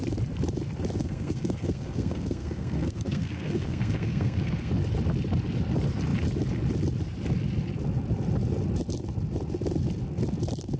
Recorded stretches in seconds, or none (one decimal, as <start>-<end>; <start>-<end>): 0.0-1.0; 4.7-10.8